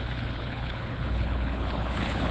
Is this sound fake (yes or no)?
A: yes